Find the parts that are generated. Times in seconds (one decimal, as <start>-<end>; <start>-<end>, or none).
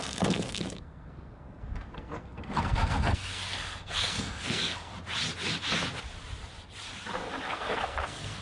0.0-4.9; 7.4-8.4